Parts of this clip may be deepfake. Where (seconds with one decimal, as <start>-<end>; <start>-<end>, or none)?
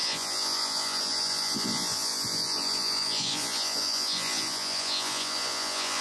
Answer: 0.0-6.0